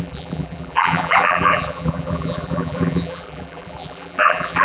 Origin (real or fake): fake